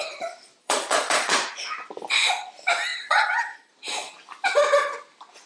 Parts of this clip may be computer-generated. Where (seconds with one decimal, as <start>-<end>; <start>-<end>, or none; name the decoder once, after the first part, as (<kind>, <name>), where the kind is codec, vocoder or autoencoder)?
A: 0.6-1.3 (vocoder, Vocos); 2.9-3.7